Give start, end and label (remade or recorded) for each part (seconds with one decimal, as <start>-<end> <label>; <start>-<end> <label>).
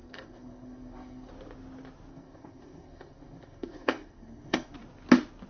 0.0-1.3 remade; 1.3-2.1 recorded; 2.1-4.7 remade; 4.7-5.5 recorded